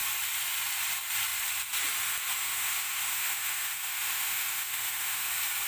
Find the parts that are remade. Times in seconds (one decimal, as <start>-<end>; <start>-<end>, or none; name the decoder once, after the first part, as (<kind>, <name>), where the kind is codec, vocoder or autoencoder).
2.4-5.3 (autoencoder, DAC-VAE)